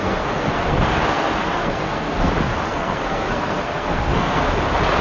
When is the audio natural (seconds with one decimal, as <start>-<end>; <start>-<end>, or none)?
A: 2.3-2.7; 4.4-5.0